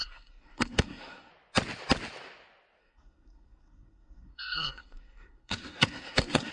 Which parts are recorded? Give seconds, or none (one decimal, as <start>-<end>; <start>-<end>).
1.3-2.8